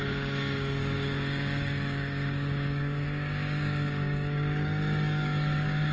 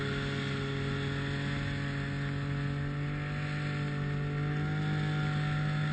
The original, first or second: second